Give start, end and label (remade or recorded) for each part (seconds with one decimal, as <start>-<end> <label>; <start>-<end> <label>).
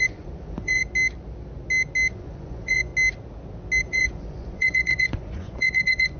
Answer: 0.0-0.8 remade; 0.8-2.1 recorded; 2.1-2.9 remade; 2.9-3.8 recorded; 3.8-6.2 remade